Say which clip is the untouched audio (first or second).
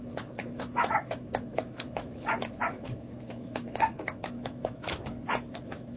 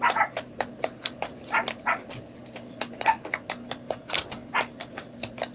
second